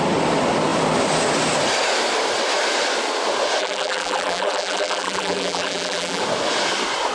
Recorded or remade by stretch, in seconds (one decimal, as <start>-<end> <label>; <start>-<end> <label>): 0.0-3.6 recorded; 3.6-6.2 remade; 6.2-7.1 recorded